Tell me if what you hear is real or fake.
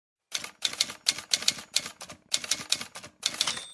real